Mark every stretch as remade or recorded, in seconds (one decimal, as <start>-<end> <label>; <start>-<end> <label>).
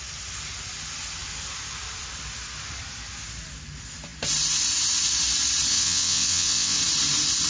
0.0-5.7 recorded; 5.7-6.8 remade; 6.8-7.5 recorded